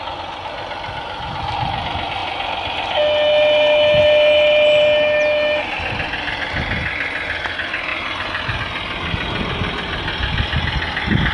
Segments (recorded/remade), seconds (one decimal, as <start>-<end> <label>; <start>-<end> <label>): 0.0-7.9 recorded; 7.9-8.6 remade; 8.6-11.3 recorded